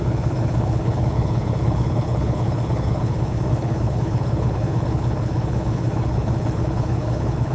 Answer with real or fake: fake